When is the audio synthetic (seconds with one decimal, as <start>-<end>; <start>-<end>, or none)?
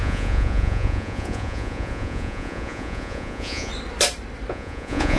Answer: 0.0-3.7; 4.5-5.2